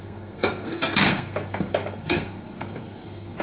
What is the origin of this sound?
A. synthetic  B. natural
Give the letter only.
A